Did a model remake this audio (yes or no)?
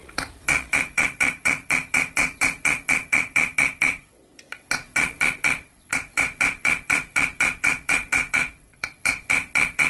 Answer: yes